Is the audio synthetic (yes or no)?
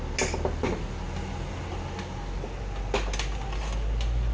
no